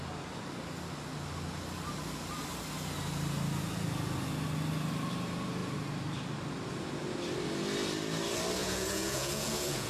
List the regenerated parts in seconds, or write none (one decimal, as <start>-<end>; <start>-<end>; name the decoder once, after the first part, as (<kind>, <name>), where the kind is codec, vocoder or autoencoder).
8.6-9.9 (vocoder, Vocos)